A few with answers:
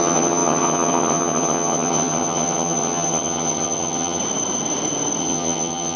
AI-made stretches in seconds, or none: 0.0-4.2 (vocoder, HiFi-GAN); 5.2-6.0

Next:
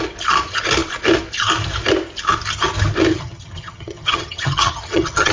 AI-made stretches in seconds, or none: 3.1-5.3 (vocoder, HiFi-GAN)

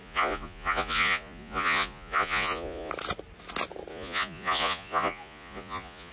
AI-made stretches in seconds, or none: 0.0-2.9 (vocoder, Vocos); 3.9-6.1

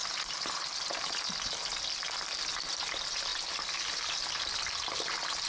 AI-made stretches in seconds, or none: none